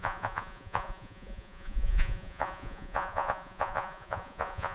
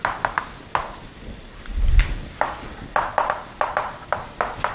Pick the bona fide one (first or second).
second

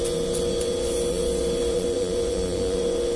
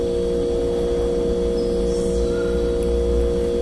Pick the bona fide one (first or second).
second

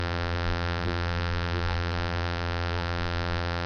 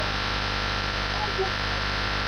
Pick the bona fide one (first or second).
second